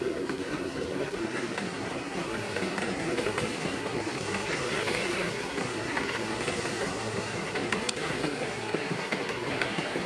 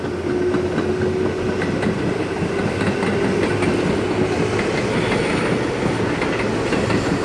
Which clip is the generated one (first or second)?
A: first